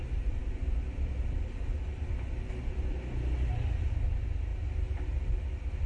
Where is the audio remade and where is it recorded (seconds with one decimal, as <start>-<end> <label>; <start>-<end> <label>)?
0.0-5.9 recorded